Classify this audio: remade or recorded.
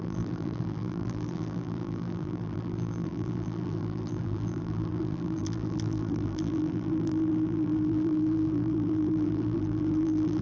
remade